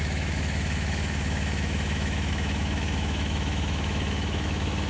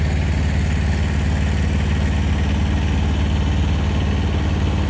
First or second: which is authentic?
second